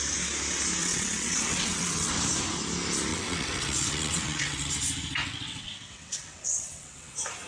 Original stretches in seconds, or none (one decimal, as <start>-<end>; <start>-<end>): 0.0-0.8; 2.1-3.1; 4.7-5.2; 7.1-7.5